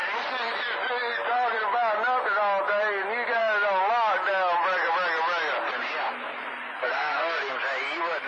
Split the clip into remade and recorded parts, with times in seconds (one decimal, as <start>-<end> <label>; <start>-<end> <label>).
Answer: 0.0-6.8 recorded; 6.8-7.4 remade; 7.4-8.3 recorded